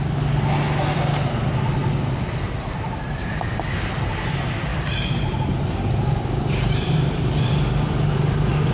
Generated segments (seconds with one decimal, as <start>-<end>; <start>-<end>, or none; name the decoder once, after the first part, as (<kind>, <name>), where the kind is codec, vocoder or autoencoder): 4.7-7.2 (vocoder, BigVGAN v2)

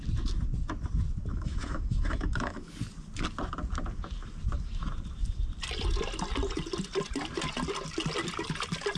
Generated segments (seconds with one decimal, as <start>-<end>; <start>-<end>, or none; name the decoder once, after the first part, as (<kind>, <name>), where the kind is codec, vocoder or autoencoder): 1.3-2.7 (autoencoder, DAC-VAE)

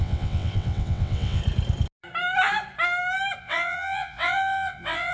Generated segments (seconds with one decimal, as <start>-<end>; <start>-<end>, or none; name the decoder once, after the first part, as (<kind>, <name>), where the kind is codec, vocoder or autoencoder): 0.0-1.4 (vocoder, WaveNeXt); 3.4-5.1

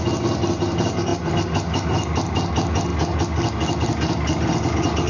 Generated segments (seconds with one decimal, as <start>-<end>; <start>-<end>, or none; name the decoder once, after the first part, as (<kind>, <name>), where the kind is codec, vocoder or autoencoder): none

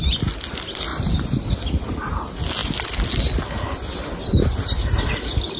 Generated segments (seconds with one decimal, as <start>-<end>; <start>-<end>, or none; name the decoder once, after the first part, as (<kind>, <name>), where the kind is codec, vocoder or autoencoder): none